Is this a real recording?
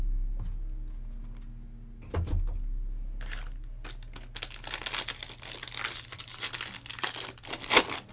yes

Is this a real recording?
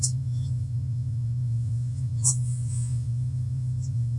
no